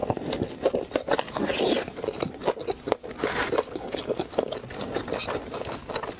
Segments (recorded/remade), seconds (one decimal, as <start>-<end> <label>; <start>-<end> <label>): 0.0-6.2 recorded